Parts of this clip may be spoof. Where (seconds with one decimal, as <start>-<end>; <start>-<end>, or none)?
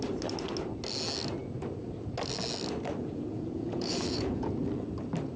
3.0-4.5